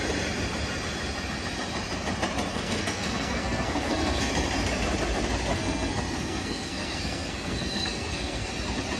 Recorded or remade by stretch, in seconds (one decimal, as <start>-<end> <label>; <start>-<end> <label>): 0.0-2.5 recorded; 2.5-4.3 remade; 4.3-5.5 recorded; 5.5-8.5 remade; 8.5-9.0 recorded